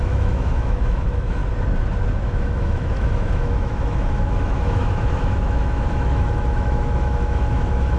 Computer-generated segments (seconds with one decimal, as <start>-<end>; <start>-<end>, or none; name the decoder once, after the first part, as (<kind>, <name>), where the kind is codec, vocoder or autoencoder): 0.0-1.4 (autoencoder, DAC-VAE); 2.2-8.0